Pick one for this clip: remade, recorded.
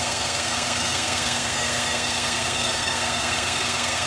remade